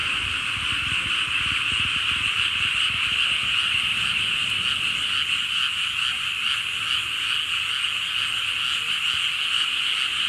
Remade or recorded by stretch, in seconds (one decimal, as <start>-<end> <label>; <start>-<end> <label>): 0.0-3.2 remade; 3.2-10.3 recorded